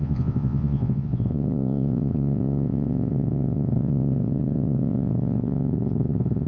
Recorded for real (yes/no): no